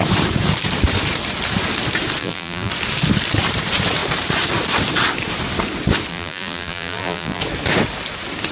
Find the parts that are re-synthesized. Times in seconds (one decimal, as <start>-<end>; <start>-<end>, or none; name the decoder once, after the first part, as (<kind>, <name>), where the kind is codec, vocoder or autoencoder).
2.2-2.7 (vocoder, BigVGAN v2); 6.1-7.4